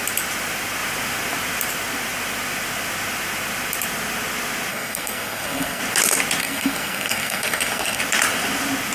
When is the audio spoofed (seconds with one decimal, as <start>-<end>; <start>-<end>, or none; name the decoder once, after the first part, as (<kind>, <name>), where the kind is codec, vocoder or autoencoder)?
4.7-5.8 (codec, SNAC); 6.4-8.0